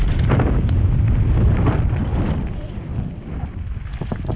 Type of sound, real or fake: real